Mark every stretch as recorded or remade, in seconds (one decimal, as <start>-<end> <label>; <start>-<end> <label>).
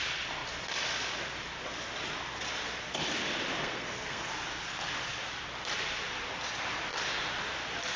0.0-3.6 recorded; 3.6-4.3 remade; 4.3-8.0 recorded